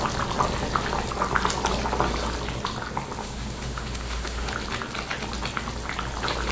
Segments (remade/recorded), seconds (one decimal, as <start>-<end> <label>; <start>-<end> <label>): 0.0-3.2 recorded; 3.2-4.5 remade; 4.5-6.5 recorded